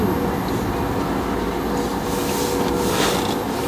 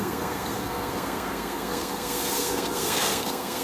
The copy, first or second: second